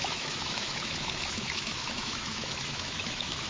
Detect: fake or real fake